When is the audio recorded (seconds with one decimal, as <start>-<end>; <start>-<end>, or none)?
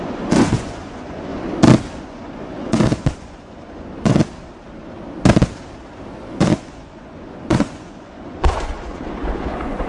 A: 1.3-2.0; 4.2-6.1